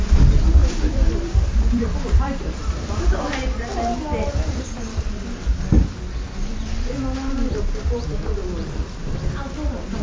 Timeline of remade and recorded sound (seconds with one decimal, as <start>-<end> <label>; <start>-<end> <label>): 0.0-0.6 recorded; 0.6-2.6 remade; 2.6-10.0 recorded